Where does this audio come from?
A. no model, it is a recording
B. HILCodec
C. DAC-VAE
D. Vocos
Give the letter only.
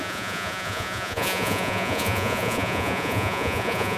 D